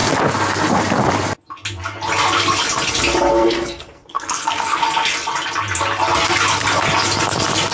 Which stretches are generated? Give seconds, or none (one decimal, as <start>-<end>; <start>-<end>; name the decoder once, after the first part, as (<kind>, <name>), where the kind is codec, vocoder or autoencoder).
3.3-4.8 (codec, SNAC)